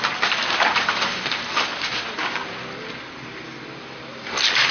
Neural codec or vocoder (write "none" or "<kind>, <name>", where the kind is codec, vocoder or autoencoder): none